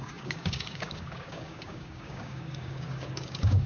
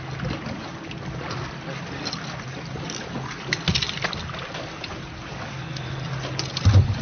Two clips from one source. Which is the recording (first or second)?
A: second